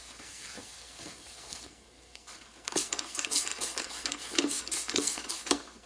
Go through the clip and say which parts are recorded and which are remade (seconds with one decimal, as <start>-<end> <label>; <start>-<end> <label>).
0.0-5.9 remade